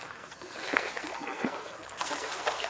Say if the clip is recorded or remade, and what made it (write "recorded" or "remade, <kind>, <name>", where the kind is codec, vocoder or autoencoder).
remade, codec, SNAC